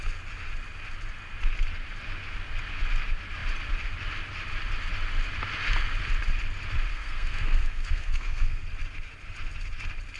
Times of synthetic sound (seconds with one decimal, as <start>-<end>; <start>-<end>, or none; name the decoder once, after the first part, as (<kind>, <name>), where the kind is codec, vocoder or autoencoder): 6.9-8.6 (codec, SNAC)